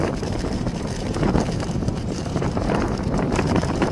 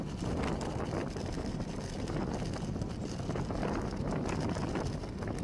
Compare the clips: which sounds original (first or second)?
second